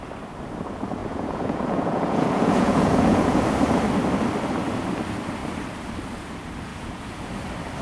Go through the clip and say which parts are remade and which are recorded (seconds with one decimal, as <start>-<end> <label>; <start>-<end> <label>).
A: 0.0-1.0 recorded; 1.0-3.4 remade; 3.4-6.7 recorded; 6.7-7.3 remade; 7.3-7.8 recorded